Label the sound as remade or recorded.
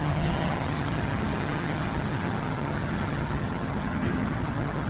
remade